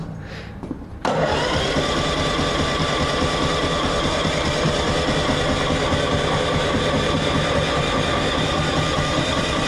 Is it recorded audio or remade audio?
remade